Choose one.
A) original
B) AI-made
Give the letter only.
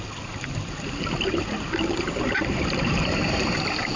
A